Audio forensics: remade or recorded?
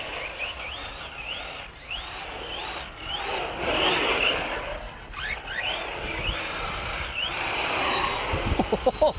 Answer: recorded